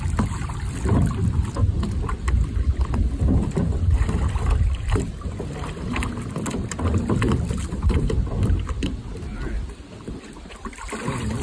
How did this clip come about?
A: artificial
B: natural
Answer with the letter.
B